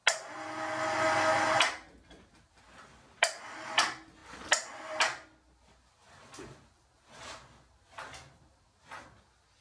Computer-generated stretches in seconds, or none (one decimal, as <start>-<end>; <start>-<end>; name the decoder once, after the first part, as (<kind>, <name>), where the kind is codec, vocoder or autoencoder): none